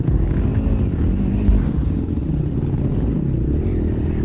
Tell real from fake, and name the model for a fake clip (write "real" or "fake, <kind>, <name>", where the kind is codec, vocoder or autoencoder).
real